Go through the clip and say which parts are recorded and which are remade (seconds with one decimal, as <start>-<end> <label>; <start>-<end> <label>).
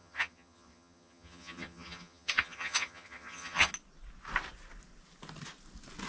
0.0-3.7 remade; 3.7-6.1 recorded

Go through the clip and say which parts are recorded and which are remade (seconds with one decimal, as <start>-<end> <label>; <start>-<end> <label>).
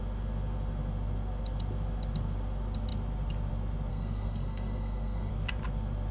0.0-3.9 recorded; 3.9-5.3 remade; 5.3-6.1 recorded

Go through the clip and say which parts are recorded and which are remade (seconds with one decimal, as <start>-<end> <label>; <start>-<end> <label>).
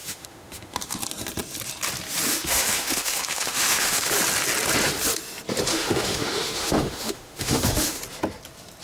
0.0-1.0 remade; 1.0-2.3 recorded; 2.3-4.1 remade; 4.1-5.7 recorded; 5.7-8.0 remade; 8.0-8.8 recorded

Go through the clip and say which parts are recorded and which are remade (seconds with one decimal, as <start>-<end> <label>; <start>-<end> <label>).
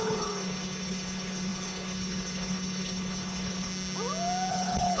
0.0-3.7 remade; 3.7-4.5 recorded; 4.5-5.0 remade